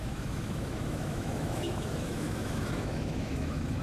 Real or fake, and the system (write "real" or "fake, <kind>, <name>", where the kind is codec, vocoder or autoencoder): fake, autoencoder, DAC-VAE